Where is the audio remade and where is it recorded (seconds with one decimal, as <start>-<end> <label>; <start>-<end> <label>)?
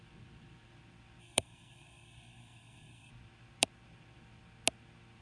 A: 0.0-1.2 recorded; 1.2-3.1 remade; 3.1-5.2 recorded